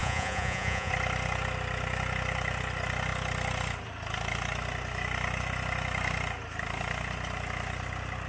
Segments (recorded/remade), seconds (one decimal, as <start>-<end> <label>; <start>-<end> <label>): 0.0-0.9 remade; 0.9-8.3 recorded